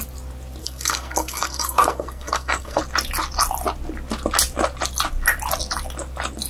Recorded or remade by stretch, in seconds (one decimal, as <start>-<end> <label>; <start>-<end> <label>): 0.0-0.6 recorded; 0.6-2.8 remade; 2.8-6.5 recorded